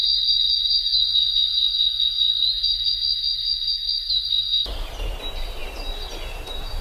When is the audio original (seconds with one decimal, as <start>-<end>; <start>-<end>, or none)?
0.0-6.8